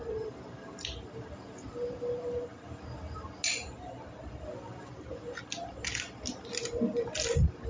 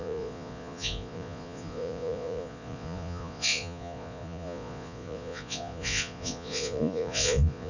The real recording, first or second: first